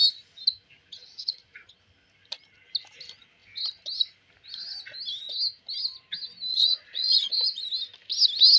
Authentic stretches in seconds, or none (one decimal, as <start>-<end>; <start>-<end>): 0.0-1.0; 1.7-6.5; 7.3-8.6